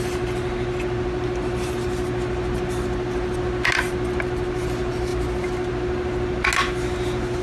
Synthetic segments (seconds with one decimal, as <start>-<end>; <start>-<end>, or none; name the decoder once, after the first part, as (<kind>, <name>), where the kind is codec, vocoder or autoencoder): none